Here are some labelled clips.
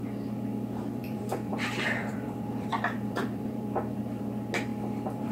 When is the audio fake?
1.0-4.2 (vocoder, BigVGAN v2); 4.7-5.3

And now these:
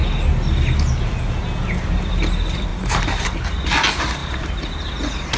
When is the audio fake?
2.7-3.6 (vocoder, BigVGAN v2); 4.2-4.9

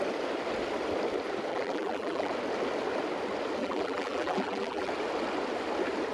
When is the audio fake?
1.5-2.3 (vocoder, BigVGAN v2); 3.6-4.9

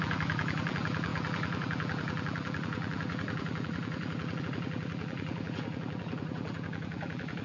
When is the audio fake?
0.0-7.4 (vocoder, BigVGAN v2)

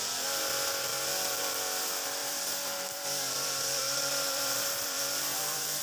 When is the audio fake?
2.2-5.8 (vocoder, BigVGAN v2)